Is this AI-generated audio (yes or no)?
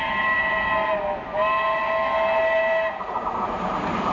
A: no